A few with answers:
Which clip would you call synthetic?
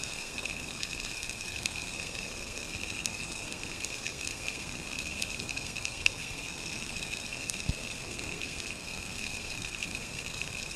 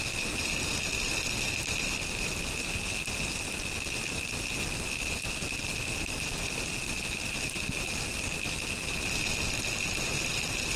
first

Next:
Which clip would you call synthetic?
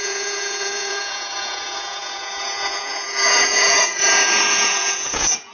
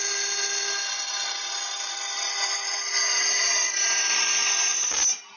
first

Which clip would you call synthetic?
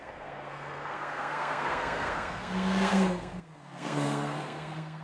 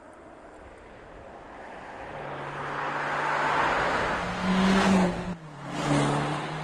first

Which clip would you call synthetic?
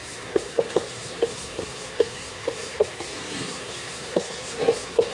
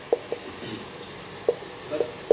first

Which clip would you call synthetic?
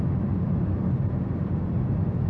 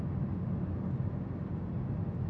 first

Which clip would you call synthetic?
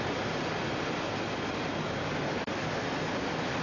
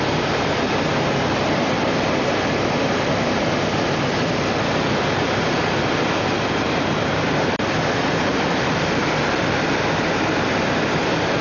second